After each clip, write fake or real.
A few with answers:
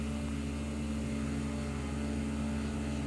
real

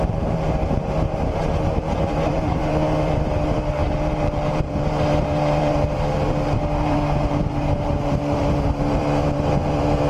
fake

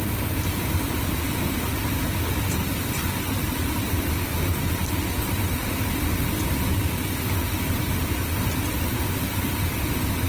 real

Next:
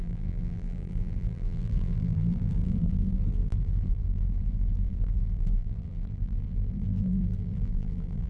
fake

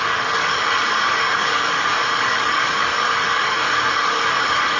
fake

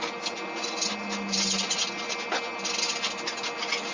real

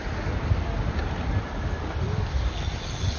real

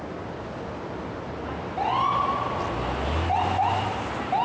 real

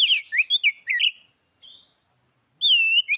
real